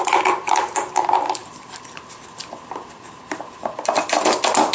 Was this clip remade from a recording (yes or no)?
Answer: no